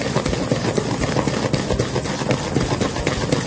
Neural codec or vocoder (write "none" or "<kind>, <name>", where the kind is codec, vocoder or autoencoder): none